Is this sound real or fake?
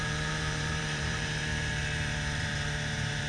fake